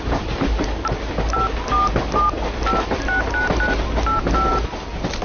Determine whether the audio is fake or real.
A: real